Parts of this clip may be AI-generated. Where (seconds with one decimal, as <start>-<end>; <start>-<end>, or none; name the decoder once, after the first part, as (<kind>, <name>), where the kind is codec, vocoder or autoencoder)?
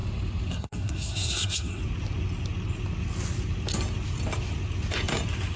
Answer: 0.5-1.8 (codec, SNAC)